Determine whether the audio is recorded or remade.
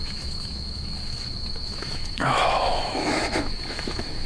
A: remade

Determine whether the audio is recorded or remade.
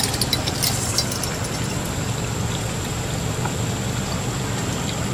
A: recorded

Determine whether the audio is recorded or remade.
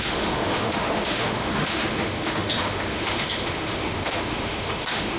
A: remade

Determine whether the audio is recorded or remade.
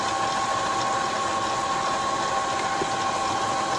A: recorded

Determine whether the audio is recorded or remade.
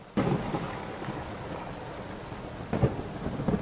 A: recorded